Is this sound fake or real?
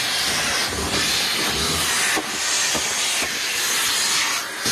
real